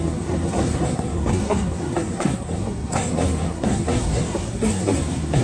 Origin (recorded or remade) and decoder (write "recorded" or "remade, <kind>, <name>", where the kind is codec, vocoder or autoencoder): remade, codec, SNAC